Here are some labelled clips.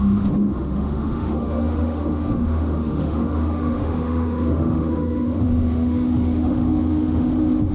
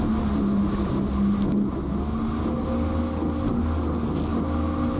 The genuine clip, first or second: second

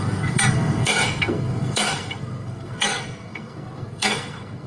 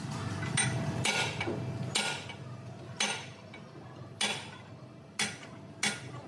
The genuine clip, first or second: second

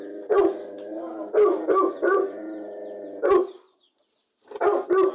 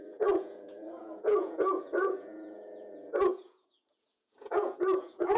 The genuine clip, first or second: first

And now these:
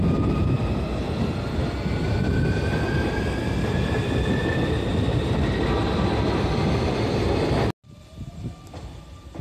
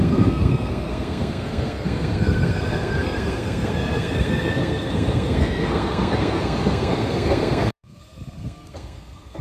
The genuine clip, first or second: first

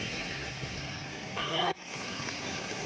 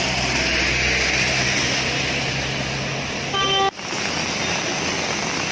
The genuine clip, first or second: second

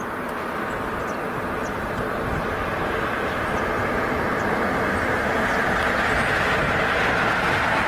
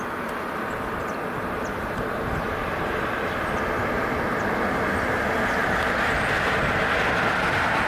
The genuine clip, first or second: first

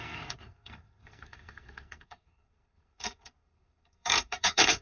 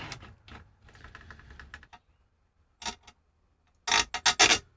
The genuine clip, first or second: second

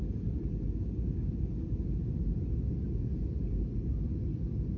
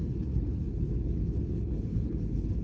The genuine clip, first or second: first